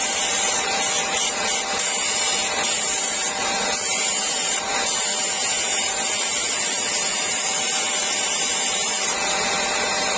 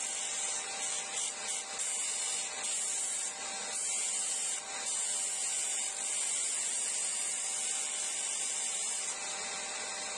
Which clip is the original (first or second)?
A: second